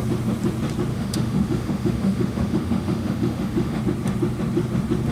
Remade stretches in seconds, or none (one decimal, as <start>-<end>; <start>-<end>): 0.9-3.8